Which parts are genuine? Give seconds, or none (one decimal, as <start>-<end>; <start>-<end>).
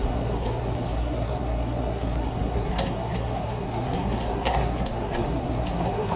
none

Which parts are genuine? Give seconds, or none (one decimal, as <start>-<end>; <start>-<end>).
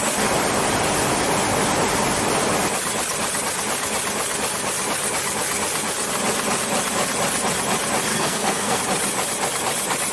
0.0-8.1; 8.8-10.1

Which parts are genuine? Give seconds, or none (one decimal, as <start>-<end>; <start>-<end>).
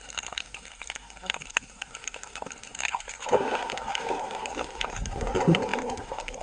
none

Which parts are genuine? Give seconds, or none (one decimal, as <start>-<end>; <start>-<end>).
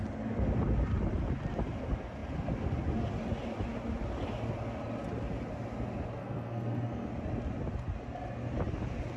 0.0-6.2; 7.1-9.2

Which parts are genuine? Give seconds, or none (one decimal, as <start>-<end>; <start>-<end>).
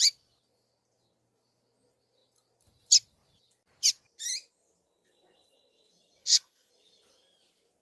0.0-6.2; 6.7-7.8